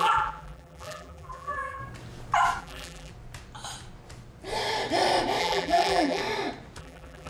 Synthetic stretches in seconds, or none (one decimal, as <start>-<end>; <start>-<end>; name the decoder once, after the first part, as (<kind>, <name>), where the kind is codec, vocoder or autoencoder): 0.0-1.8 (vocoder, BigVGAN v2); 2.6-3.1; 5.4-6.2; 6.8-7.3